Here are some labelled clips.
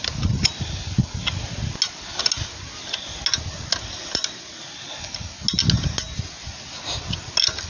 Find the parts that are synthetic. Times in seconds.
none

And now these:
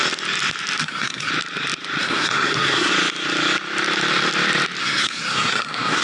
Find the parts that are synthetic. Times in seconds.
0.8-1.3; 2.0-2.9; 4.8-6.0

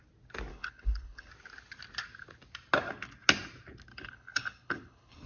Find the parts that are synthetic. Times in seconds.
0.5-1.3; 3.9-5.3

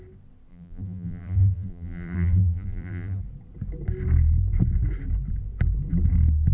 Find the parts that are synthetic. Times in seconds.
0.5-3.2

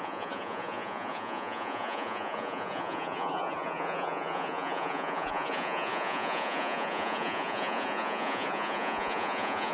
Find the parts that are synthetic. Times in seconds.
0.0-9.7

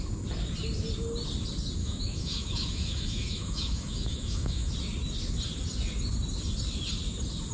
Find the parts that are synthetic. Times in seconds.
1.8-4.7